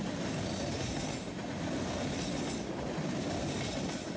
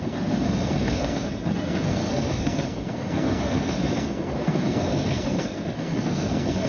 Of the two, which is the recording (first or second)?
first